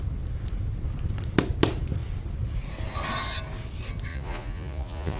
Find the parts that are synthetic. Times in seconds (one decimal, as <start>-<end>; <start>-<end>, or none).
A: 4.1-5.2